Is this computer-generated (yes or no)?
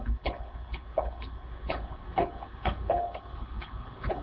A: yes